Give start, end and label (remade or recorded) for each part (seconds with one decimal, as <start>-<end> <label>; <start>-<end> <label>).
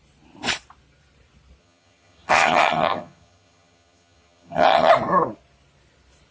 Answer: 0.0-1.6 recorded; 1.6-4.9 remade; 4.9-6.3 recorded